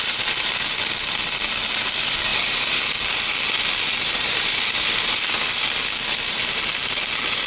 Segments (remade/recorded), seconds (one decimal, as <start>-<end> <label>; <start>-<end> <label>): 0.0-2.3 recorded; 2.3-5.2 remade; 5.2-7.5 recorded